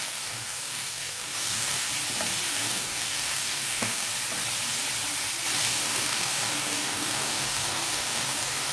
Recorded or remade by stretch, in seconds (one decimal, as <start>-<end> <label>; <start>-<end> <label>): 0.0-1.9 remade; 1.9-2.5 recorded; 2.5-4.1 remade; 4.1-5.6 recorded; 5.6-8.7 remade